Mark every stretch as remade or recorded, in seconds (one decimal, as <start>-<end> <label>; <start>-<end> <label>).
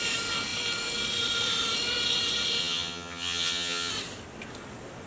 0.0-2.6 recorded; 2.6-3.9 remade; 3.9-5.1 recorded